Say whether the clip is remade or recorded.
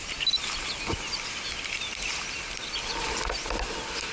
recorded